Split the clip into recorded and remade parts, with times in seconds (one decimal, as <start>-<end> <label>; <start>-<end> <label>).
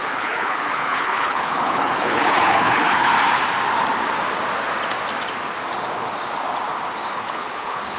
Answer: 0.0-3.1 remade; 3.1-7.1 recorded; 7.1-8.0 remade